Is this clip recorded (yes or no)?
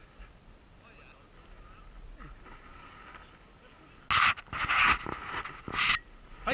yes